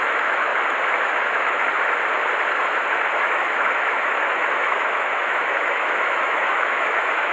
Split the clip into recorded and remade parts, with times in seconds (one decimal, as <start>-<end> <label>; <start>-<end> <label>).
0.0-0.5 remade; 0.5-1.0 recorded; 1.0-1.7 remade; 1.7-2.9 recorded; 2.9-7.3 remade

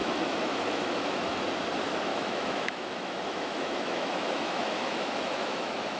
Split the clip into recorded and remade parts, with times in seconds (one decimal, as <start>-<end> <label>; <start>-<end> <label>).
0.0-1.4 remade; 1.4-2.1 recorded; 2.1-6.0 remade

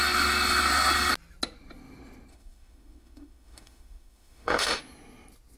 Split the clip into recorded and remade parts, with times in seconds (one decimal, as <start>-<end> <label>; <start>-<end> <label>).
0.0-2.3 recorded; 2.3-4.8 remade; 4.8-5.6 recorded

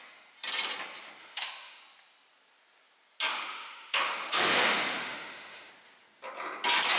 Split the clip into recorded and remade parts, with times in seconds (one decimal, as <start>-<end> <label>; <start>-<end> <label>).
0.0-1.2 recorded; 1.2-1.8 remade; 1.8-3.3 recorded; 3.3-5.7 remade; 5.7-7.0 recorded

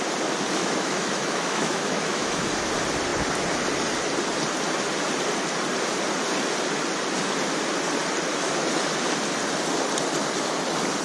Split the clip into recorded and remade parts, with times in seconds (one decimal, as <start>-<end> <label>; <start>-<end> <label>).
0.0-0.6 recorded; 0.6-2.5 remade; 2.5-11.0 recorded

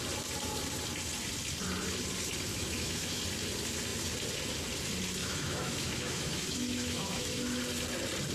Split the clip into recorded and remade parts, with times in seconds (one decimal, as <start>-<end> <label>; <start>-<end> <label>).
0.0-2.5 recorded; 2.5-3.2 remade; 3.2-5.2 recorded; 5.2-7.6 remade; 7.6-8.3 recorded